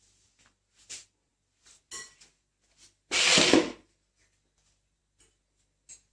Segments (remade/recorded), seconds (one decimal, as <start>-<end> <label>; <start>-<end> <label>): 0.0-6.1 recorded